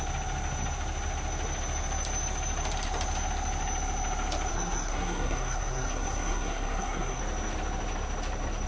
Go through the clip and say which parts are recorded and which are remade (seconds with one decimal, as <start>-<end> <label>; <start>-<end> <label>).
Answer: 0.0-4.5 recorded; 4.5-7.2 remade; 7.2-8.7 recorded